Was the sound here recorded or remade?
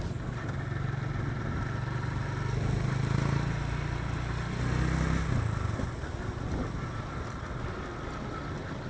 recorded